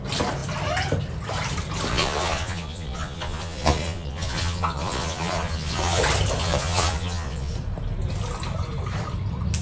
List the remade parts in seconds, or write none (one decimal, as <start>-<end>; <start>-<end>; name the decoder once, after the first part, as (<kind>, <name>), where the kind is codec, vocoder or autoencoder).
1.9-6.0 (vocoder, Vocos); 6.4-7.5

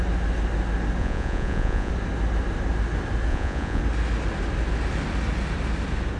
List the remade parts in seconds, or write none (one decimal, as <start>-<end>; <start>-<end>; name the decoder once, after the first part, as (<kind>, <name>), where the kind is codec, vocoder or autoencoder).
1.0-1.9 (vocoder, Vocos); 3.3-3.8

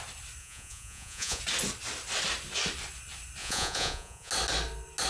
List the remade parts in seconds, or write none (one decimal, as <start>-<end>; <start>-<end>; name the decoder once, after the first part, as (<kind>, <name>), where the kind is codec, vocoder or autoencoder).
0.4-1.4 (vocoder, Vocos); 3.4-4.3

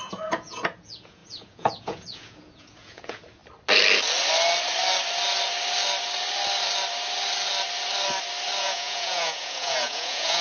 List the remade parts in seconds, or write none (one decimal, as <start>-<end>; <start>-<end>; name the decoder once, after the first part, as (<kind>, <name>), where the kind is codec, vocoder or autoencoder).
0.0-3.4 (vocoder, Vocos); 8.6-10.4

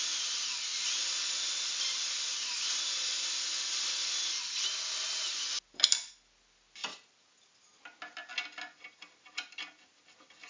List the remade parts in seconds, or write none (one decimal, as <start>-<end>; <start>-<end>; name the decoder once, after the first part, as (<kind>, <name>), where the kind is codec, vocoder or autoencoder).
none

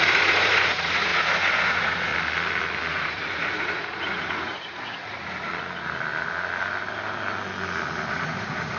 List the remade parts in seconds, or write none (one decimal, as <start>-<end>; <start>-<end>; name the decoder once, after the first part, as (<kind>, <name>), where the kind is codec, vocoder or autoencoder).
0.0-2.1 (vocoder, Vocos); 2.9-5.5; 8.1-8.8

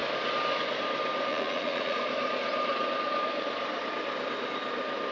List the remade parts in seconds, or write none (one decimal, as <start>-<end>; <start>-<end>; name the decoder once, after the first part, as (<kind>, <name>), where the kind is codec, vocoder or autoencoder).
1.3-2.0 (vocoder, Vocos)

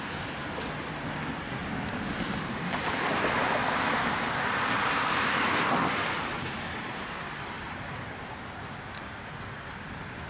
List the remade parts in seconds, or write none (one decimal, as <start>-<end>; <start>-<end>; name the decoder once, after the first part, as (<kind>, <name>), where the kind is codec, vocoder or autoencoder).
none